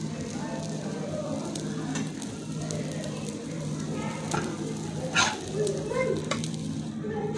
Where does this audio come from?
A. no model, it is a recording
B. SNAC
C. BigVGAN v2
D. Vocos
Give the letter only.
C